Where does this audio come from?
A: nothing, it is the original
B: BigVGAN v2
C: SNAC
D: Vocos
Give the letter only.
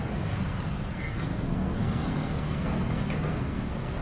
C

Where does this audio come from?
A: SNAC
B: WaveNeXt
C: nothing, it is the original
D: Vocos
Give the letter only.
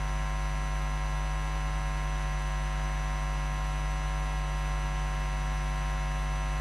C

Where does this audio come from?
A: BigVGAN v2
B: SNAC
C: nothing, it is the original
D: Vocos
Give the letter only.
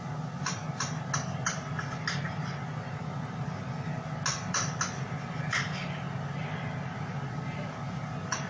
C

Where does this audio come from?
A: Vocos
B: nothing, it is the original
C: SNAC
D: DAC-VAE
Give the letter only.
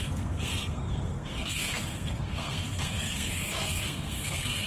C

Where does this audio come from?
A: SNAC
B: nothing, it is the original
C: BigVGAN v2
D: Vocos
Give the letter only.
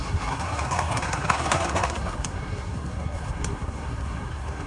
A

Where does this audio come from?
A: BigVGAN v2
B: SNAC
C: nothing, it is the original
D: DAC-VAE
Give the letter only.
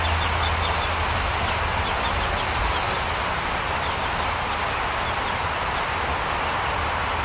C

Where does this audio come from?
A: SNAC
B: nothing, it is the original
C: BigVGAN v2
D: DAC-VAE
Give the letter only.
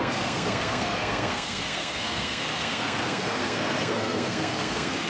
A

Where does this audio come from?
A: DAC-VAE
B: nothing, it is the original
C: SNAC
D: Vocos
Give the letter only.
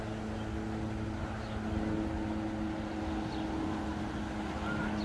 B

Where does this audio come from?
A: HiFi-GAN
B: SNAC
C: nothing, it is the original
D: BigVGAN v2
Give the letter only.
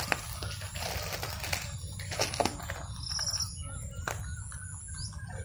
C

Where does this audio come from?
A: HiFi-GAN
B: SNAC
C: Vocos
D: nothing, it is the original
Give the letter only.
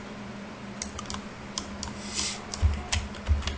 D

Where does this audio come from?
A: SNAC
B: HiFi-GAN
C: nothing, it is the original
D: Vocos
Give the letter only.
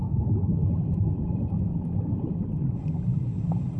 C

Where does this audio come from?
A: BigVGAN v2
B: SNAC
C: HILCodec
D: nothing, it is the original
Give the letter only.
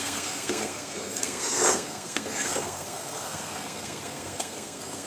B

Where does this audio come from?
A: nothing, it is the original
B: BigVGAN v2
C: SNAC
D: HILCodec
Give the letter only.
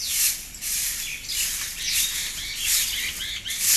A